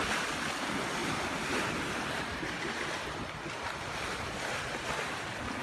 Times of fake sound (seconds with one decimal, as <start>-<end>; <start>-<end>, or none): none